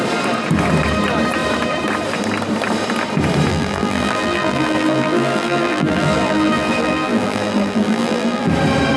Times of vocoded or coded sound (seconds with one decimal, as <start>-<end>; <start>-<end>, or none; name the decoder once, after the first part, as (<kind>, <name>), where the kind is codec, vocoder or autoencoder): 3.5-8.5 (vocoder, BigVGAN v2)